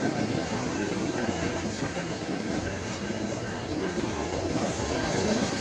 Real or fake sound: fake